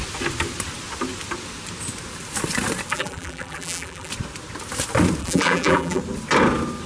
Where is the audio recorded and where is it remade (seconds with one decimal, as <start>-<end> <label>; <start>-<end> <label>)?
0.0-2.9 recorded; 2.9-4.1 remade; 4.1-5.2 recorded; 5.2-6.0 remade; 6.0-6.9 recorded